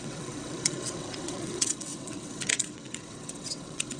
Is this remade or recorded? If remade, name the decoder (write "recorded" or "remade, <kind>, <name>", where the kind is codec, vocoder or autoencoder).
remade, vocoder, WaveNeXt